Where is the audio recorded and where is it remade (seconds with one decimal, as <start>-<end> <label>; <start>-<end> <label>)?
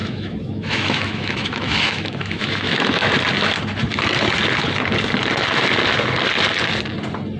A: 0.0-3.0 remade; 3.0-7.4 recorded